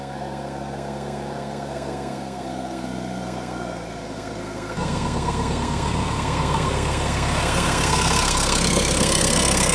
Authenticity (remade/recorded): remade